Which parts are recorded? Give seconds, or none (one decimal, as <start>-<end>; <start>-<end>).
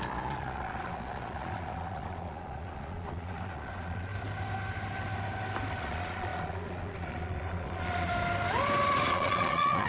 4.1-5.8; 8.1-9.1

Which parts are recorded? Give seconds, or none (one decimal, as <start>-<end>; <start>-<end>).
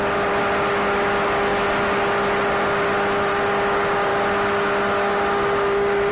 0.0-6.1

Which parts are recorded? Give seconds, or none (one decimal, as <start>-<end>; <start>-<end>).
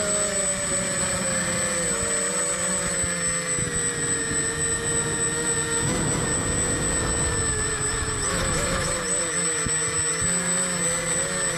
0.0-8.3; 8.9-11.6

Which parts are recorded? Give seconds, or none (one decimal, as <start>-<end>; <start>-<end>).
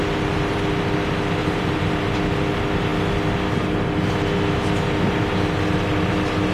0.0-1.4; 2.0-6.5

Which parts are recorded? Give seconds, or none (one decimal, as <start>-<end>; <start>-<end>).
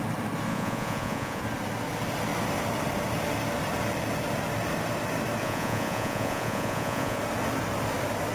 0.0-0.5; 1.4-5.4; 7.2-8.3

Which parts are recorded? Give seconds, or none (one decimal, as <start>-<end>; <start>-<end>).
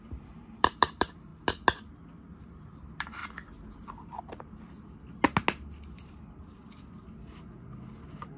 1.3-2.4; 3.2-8.4